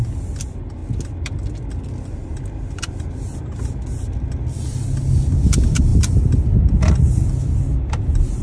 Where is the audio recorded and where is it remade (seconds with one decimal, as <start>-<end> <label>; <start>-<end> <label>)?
0.0-8.4 recorded